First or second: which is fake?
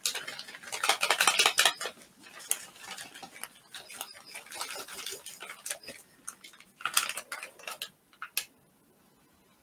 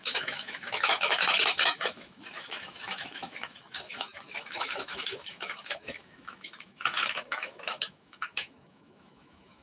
second